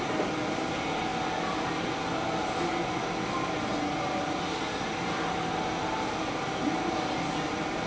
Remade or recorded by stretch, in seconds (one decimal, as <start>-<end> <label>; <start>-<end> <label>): 0.0-7.9 recorded